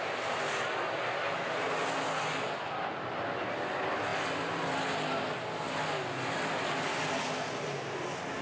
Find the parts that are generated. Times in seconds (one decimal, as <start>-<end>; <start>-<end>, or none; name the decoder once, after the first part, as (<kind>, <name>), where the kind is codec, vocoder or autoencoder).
none